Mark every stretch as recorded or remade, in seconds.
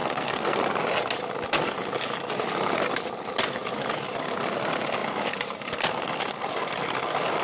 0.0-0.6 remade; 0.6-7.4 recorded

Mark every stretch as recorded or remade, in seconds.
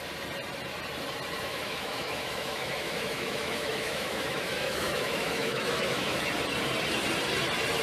0.0-1.5 recorded; 1.5-6.2 remade; 6.2-7.8 recorded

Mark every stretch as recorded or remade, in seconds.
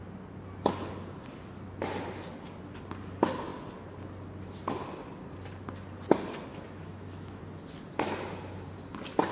0.0-6.5 recorded; 6.5-7.4 remade; 7.4-9.3 recorded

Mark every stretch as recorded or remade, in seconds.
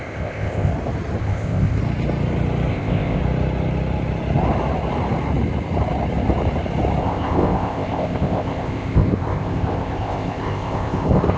0.0-0.7 remade; 0.7-1.2 recorded; 1.2-1.8 remade; 1.8-2.7 recorded; 2.7-3.2 remade; 3.2-7.0 recorded; 7.0-11.4 remade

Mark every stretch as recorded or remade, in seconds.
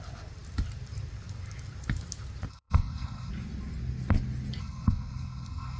0.0-2.5 recorded; 2.5-3.3 remade; 3.3-4.6 recorded; 4.6-5.8 remade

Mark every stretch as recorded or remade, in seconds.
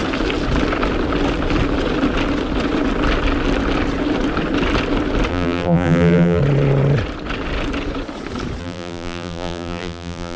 0.0-5.3 recorded; 5.3-6.4 remade; 6.4-8.6 recorded; 8.6-10.4 remade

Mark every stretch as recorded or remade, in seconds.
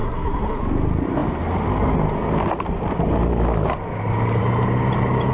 0.0-0.6 remade; 0.6-5.3 recorded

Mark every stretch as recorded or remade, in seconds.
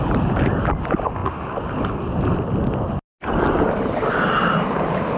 0.0-5.2 recorded